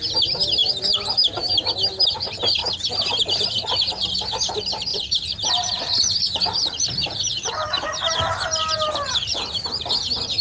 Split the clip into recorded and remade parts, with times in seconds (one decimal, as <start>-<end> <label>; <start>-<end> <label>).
0.0-0.6 recorded; 0.6-1.5 remade; 1.5-4.9 recorded; 4.9-9.9 remade; 9.9-10.4 recorded